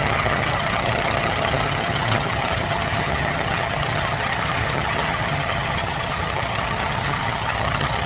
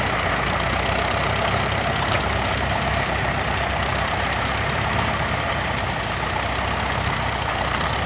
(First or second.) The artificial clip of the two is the first